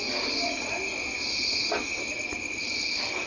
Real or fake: real